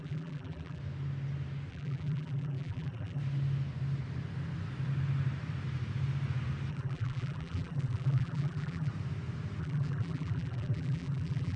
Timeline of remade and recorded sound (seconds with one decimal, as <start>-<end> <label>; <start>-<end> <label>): 0.0-0.8 remade; 0.8-1.7 recorded; 1.7-3.2 remade; 3.2-6.7 recorded; 6.7-8.9 remade; 8.9-9.6 recorded; 9.6-11.6 remade